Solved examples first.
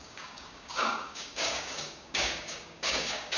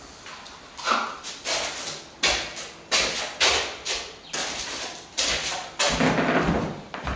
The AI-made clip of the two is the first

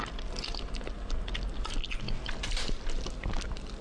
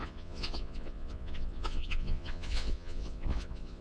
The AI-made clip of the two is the second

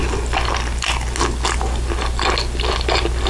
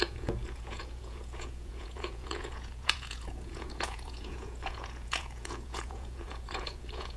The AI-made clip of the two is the second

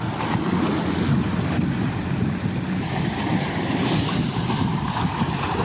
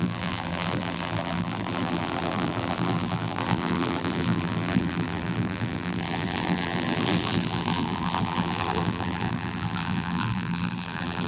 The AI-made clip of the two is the second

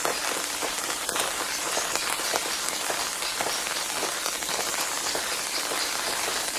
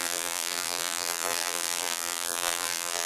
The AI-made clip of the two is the second